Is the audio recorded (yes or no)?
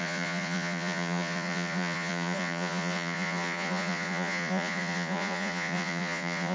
no